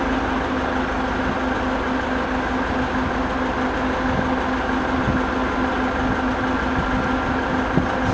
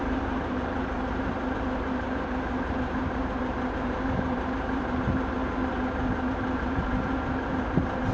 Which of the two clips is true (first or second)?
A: first